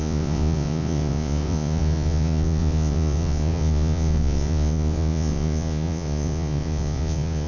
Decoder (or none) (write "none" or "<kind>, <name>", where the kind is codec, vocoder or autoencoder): vocoder, Vocos